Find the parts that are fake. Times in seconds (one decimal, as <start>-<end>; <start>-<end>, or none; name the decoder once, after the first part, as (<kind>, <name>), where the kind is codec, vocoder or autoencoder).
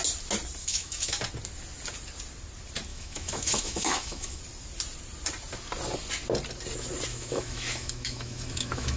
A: 0.6-1.2 (autoencoder, DAC-VAE); 2.9-4.4; 7.1-9.0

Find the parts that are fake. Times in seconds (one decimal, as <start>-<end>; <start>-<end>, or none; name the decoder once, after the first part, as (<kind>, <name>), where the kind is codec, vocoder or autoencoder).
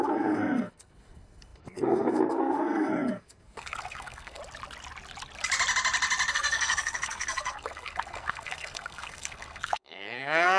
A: 0.0-4.4 (codec, SNAC); 6.3-10.6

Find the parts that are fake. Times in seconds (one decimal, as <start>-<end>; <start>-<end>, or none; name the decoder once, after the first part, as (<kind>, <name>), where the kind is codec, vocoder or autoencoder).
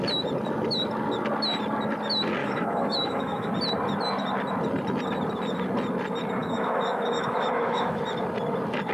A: 2.4-3.5 (autoencoder, DAC-VAE); 6.4-8.0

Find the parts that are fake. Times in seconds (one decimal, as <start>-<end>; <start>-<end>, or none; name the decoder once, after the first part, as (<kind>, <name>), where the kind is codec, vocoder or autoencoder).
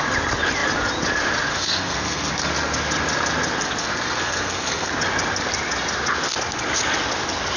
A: 1.5-2.3 (codec, SNAC); 3.8-4.9